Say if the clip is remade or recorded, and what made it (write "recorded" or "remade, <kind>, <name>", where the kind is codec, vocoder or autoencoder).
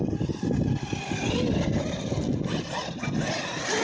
recorded